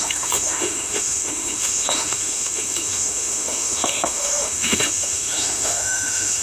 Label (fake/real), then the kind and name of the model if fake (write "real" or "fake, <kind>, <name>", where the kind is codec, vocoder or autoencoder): fake, autoencoder, DAC-VAE